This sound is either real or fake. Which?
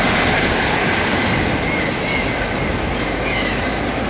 real